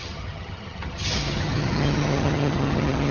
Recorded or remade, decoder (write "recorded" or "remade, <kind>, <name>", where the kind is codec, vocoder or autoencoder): remade, vocoder, HiFi-GAN